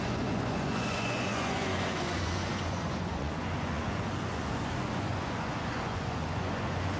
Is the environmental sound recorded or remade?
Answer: remade